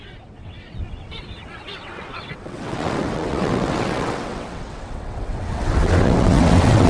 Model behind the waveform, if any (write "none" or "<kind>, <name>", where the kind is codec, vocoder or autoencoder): vocoder, WaveNeXt